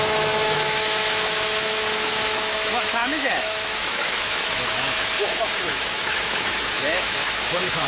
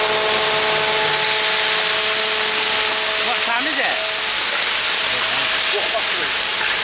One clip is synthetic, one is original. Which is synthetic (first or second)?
first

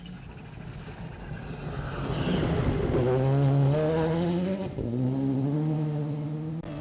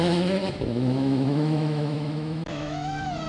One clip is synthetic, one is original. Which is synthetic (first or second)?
second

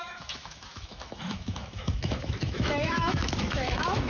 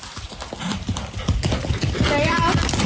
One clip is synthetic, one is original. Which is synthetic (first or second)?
first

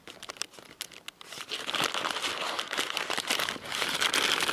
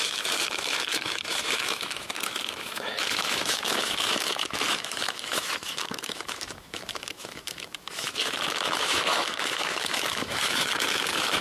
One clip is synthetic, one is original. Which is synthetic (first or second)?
second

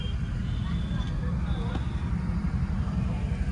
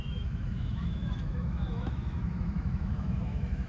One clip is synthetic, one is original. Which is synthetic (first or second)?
second